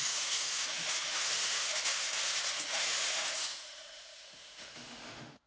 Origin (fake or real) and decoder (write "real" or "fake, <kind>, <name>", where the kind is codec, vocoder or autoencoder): fake, autoencoder, DAC-VAE